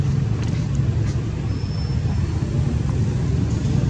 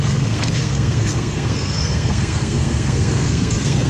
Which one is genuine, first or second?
first